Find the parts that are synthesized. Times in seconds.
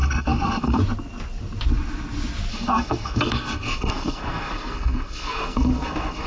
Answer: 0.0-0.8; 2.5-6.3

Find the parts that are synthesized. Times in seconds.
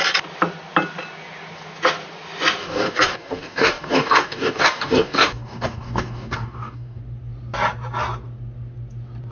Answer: 2.6-7.0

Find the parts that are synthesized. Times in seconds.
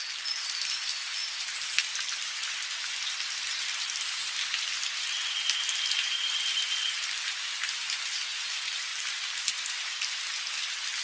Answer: 1.2-2.0; 8.9-10.2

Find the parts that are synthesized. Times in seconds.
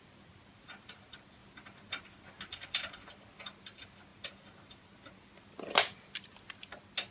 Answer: 1.4-3.1; 4.1-5.4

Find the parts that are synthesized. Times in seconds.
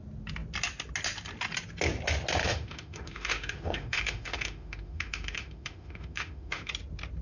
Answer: 2.4-6.7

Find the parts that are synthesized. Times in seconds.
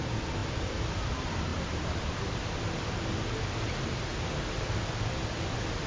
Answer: 1.5-3.4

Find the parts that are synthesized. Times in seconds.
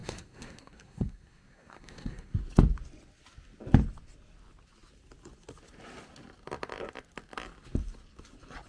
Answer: 0.0-2.4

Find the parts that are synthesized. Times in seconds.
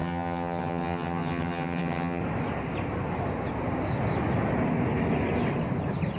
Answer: 0.0-2.2